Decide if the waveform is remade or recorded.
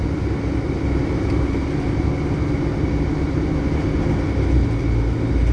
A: recorded